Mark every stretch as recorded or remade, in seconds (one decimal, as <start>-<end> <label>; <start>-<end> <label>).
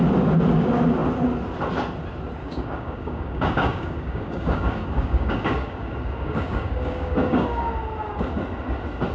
0.0-2.4 recorded; 2.4-7.7 remade; 7.7-9.1 recorded